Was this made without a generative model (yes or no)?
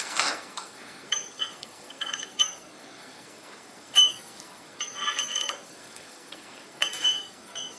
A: no